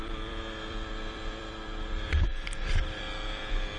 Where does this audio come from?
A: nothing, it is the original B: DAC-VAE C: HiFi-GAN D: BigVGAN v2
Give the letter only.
D